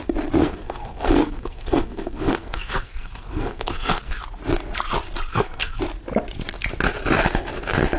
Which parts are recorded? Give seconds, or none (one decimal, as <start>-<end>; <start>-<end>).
0.0-0.4; 4.2-5.3; 5.8-8.0